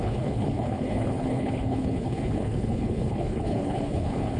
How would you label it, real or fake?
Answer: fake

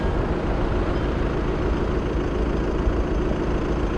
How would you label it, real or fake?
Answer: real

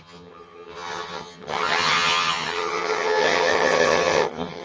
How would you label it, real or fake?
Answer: fake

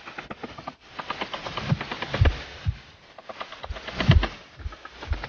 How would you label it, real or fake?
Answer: real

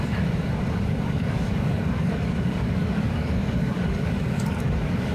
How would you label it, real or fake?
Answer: fake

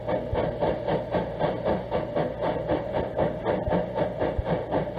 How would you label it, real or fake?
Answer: real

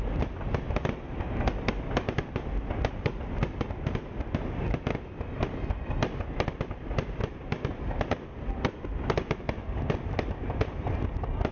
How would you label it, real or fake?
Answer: real